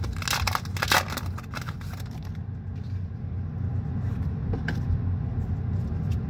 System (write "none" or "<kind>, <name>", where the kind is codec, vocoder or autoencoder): none